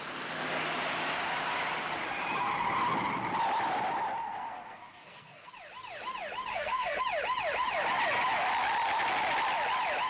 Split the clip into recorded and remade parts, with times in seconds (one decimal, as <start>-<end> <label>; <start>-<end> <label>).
0.0-4.2 recorded; 4.2-5.5 remade; 5.5-6.5 recorded; 6.5-7.0 remade; 7.0-10.1 recorded